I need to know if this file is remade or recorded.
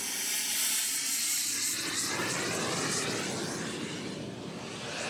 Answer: recorded